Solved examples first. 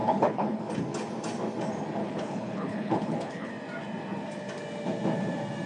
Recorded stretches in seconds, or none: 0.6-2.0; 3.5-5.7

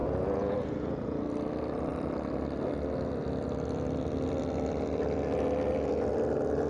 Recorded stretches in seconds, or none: 1.2-6.7

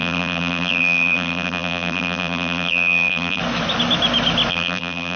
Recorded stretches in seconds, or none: 3.4-4.5

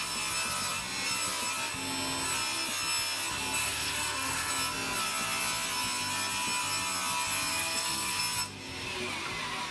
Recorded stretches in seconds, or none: 0.0-3.6; 4.5-7.5; 8.2-9.7

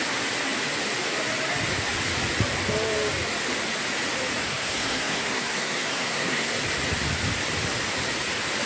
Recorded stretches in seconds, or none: 0.0-4.4; 6.6-8.7

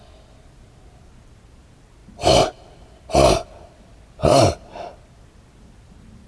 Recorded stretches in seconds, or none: 0.0-6.3